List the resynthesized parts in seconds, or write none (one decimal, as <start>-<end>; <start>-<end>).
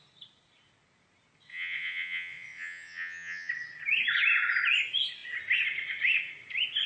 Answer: 1.5-3.5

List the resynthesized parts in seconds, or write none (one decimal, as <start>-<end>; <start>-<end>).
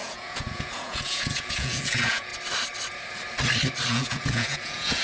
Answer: 0.0-2.3; 3.9-5.0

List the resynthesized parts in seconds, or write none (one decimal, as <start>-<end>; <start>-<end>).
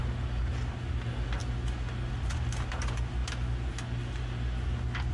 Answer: none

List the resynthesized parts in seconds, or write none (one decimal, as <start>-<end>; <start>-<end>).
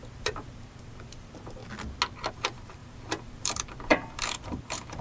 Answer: 0.0-1.6; 2.3-5.0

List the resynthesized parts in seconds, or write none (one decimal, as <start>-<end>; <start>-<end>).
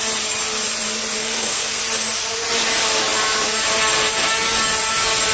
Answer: 1.2-1.8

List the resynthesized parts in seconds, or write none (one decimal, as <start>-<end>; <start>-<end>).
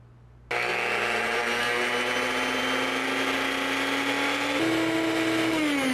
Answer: none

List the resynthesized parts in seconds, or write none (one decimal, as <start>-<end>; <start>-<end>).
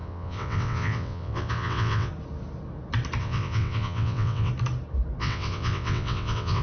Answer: 0.0-2.1; 3.2-4.5; 5.2-6.6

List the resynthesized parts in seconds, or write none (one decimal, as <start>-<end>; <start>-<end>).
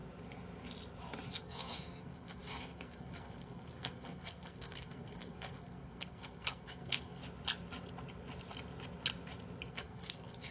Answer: 1.4-7.2; 9.7-10.5